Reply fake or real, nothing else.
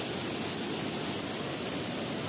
real